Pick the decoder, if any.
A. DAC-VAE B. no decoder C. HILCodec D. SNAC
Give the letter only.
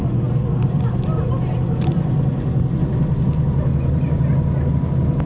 B